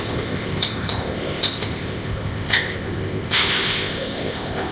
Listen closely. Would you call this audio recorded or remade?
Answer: remade